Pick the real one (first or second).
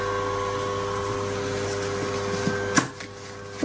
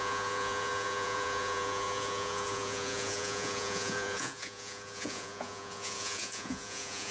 first